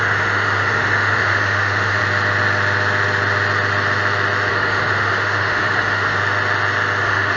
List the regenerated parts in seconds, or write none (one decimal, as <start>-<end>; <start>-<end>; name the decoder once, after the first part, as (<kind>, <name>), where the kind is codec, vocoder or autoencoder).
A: 0.0-2.0 (autoencoder, DAC-VAE); 4.5-6.2; 7.0-7.4